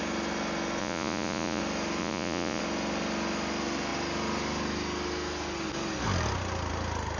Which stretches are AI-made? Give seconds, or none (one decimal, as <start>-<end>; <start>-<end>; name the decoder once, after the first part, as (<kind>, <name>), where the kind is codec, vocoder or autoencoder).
0.8-1.6 (vocoder, Vocos); 2.0-2.6